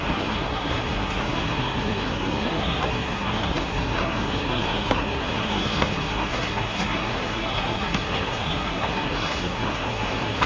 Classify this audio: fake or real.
fake